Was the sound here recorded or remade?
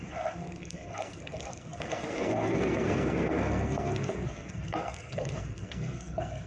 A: remade